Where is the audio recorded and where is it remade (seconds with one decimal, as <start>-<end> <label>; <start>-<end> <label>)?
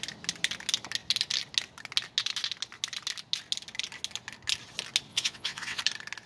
0.0-5.1 recorded; 5.1-5.8 remade; 5.8-6.3 recorded